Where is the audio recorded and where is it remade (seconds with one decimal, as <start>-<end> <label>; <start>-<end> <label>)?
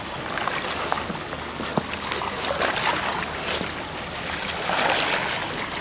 0.0-5.8 recorded